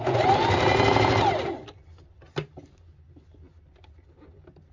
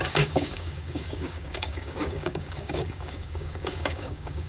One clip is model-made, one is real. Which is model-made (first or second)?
second